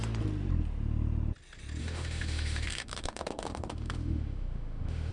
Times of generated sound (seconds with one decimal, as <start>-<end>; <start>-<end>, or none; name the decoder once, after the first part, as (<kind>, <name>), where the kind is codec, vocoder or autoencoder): 1.8-5.1 (autoencoder, DAC-VAE)